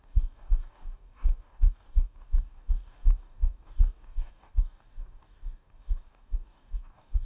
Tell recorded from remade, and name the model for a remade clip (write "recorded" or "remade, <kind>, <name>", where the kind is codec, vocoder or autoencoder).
remade, codec, DAC